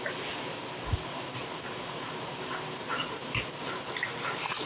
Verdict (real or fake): real